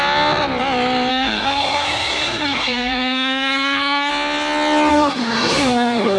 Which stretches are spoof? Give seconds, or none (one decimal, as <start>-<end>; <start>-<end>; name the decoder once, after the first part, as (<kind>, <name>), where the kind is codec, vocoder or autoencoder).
1.1-4.1 (codec, SNAC); 4.9-6.2